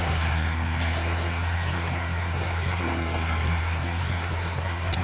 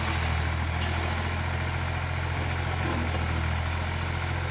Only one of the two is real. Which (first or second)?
second